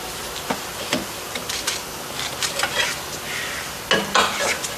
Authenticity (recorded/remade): recorded